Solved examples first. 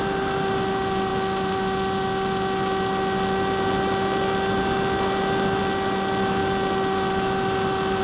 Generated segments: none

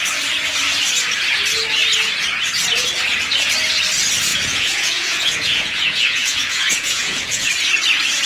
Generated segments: 4.3-7.5 (vocoder, Vocos)

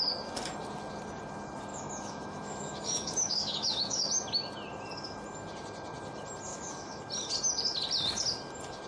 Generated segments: 1.7-4.1 (autoencoder, DAC-VAE); 6.5-7.0